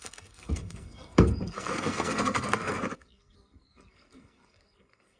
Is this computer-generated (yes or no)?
yes